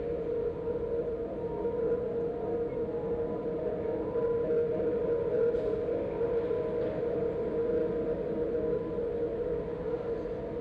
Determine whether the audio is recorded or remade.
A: recorded